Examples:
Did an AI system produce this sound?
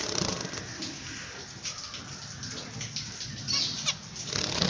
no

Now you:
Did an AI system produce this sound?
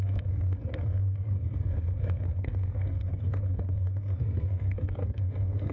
yes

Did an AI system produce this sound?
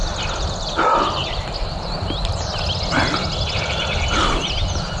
no